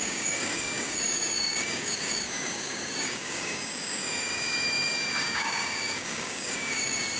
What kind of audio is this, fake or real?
fake